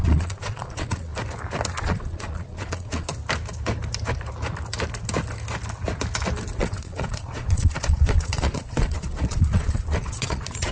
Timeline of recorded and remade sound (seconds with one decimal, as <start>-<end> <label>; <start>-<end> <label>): 0.0-1.1 remade; 1.1-1.7 recorded; 1.7-3.1 remade; 3.1-6.6 recorded; 6.6-10.7 remade